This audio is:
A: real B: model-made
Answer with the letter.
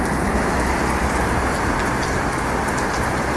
A